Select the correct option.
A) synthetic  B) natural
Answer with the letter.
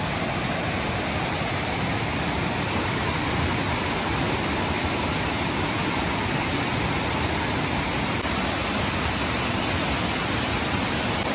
B